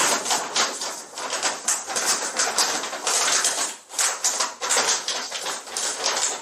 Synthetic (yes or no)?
no